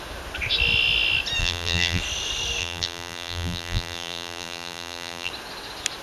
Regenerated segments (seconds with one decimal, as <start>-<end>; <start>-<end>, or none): 1.4-2.0; 2.6-5.3